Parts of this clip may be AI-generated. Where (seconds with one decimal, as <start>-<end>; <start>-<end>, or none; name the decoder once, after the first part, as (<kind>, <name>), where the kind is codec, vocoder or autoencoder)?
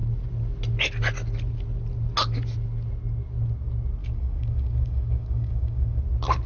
4.0-6.0 (codec, DAC)